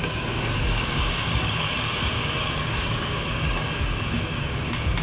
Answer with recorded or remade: remade